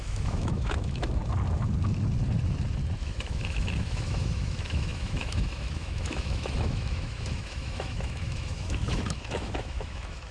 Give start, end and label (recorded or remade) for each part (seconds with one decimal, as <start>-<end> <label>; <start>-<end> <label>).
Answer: 0.0-1.2 remade; 1.2-3.0 recorded; 3.0-10.3 remade